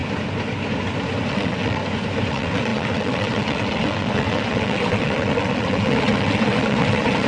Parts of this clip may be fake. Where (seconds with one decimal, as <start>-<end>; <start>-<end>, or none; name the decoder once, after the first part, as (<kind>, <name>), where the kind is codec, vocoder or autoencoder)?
1.3-1.8 (vocoder, WaveNeXt); 2.3-7.3